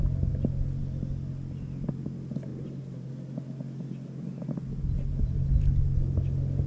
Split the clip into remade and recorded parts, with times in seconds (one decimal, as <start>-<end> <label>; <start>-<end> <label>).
0.0-2.5 recorded; 2.5-3.1 remade; 3.1-5.1 recorded; 5.1-5.6 remade; 5.6-6.7 recorded